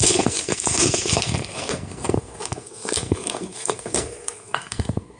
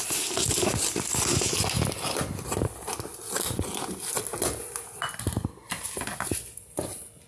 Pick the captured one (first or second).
second